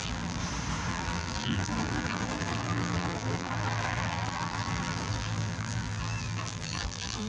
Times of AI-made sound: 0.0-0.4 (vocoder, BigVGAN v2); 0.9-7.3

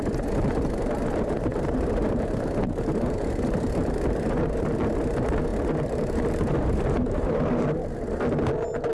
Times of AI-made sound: 1.5-4.8 (vocoder, BigVGAN v2); 5.5-7.6

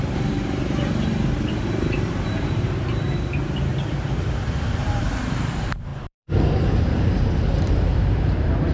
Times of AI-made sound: 0.0-3.7 (vocoder, BigVGAN v2); 4.7-8.7

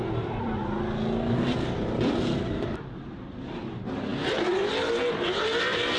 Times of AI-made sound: none

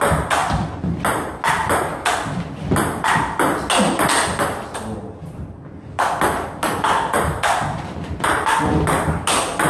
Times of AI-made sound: none

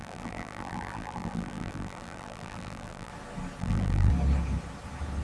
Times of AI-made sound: 0.0-3.1 (vocoder, BigVGAN v2); 3.6-4.1

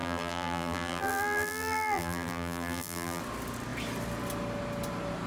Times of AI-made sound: 0.0-3.2 (vocoder, BigVGAN v2)

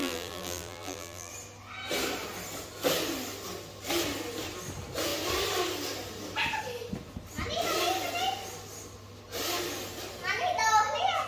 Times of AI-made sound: 0.0-1.3 (vocoder, BigVGAN v2)